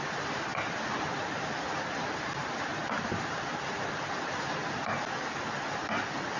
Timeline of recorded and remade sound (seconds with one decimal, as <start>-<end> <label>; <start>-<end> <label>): 0.0-6.4 recorded